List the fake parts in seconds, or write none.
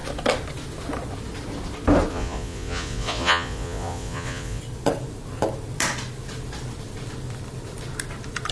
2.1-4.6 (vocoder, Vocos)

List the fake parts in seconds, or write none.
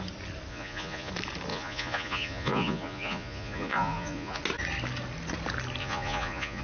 0.5-1.1 (vocoder, Vocos); 1.5-4.4; 5.8-6.6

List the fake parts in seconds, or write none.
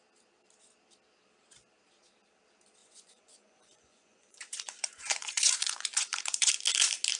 2.8-6.5 (vocoder, Vocos)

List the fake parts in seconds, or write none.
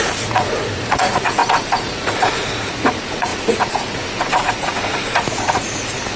0.0-6.2 (vocoder, Vocos)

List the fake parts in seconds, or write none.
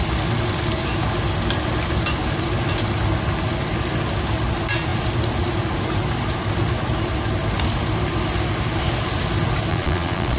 9.7-10.4 (vocoder, Vocos)